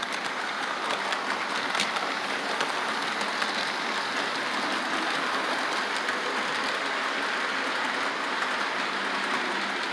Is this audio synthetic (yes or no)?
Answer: no